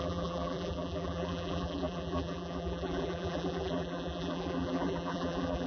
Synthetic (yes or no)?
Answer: yes